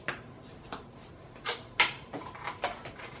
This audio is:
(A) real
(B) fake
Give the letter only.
A